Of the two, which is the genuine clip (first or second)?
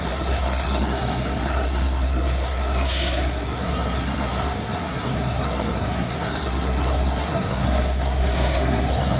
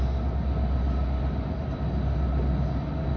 second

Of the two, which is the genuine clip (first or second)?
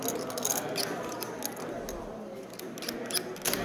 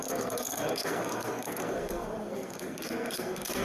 first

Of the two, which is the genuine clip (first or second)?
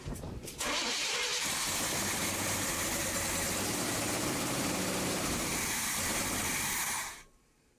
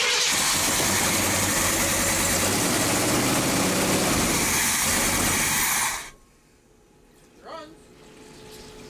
second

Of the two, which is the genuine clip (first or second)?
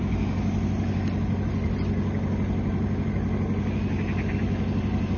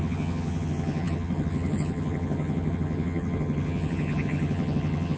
first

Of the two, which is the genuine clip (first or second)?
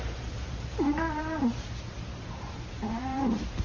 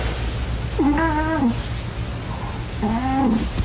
second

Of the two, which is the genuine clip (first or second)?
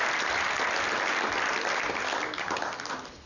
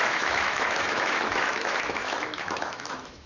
first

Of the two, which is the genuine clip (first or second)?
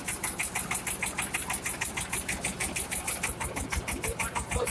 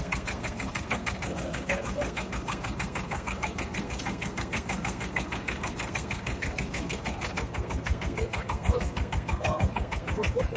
first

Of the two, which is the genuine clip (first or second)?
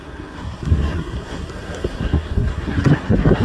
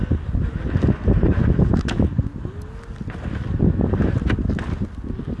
second